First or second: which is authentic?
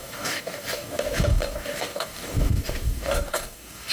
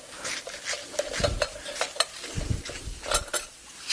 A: second